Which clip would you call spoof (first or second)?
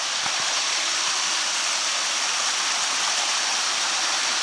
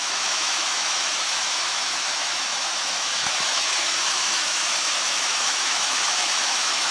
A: second